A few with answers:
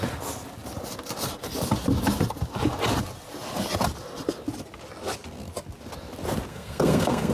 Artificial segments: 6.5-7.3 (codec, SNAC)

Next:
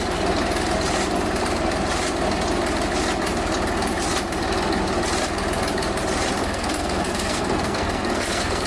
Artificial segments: 6.4-8.7 (codec, SNAC)

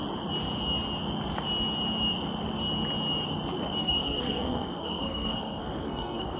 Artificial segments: 3.8-6.4 (codec, SNAC)

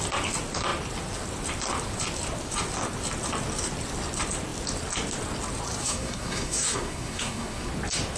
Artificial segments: 5.8-7.7 (codec, SNAC)

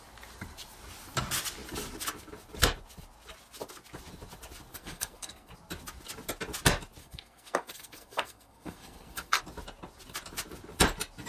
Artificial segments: 4.7-5.5 (codec, SNAC); 7.0-9.4